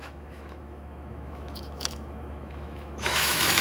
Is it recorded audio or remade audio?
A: remade